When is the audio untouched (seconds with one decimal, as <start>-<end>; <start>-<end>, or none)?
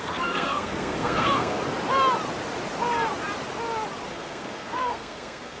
1.6-4.1